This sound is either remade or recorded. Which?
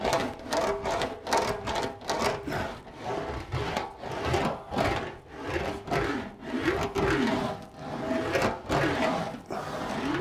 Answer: recorded